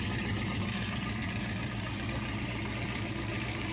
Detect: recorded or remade remade